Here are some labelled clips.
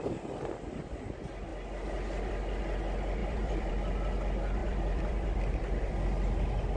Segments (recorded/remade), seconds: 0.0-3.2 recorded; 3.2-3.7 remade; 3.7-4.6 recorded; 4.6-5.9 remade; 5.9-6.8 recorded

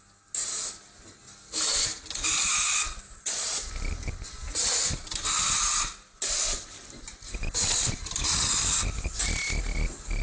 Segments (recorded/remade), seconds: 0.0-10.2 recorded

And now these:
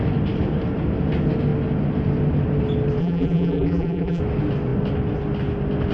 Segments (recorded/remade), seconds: 0.0-3.0 recorded; 3.0-4.2 remade; 4.2-5.9 recorded

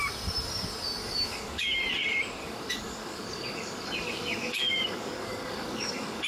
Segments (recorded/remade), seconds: 0.0-1.0 recorded; 1.0-1.8 remade; 1.8-2.4 recorded; 2.4-6.3 remade

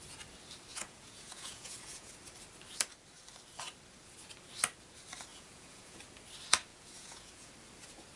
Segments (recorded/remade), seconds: 0.0-0.7 recorded; 0.7-2.1 remade; 2.1-5.3 recorded; 5.3-6.0 remade; 6.0-6.7 recorded; 6.7-7.5 remade; 7.5-8.2 recorded